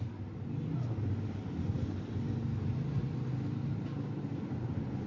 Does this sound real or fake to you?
real